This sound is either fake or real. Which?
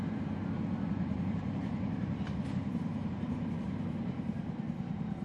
fake